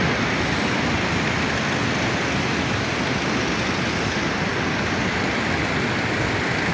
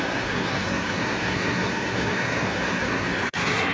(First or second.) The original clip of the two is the first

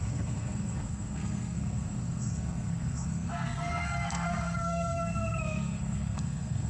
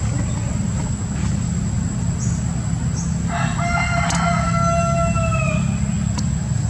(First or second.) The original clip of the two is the second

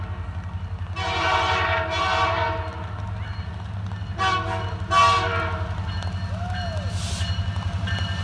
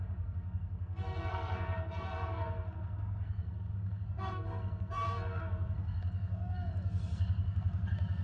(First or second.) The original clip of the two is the first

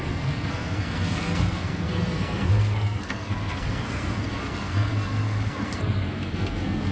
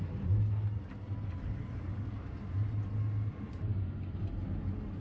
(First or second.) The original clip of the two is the second